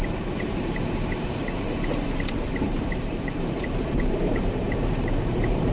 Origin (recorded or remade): remade